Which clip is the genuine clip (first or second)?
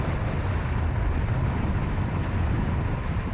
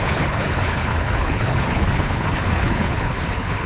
first